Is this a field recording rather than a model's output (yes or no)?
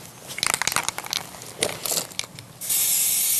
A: yes